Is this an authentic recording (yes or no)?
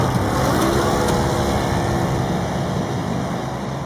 yes